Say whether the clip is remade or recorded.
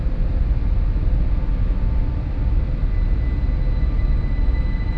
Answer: recorded